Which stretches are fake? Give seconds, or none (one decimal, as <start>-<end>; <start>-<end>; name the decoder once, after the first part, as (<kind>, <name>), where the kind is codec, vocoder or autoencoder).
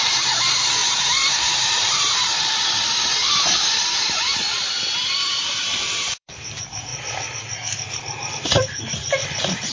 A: 0.0-6.9 (vocoder, BigVGAN v2); 8.3-9.7